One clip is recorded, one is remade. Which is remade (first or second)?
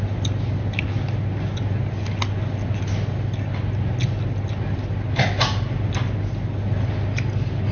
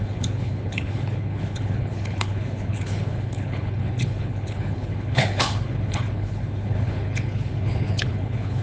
second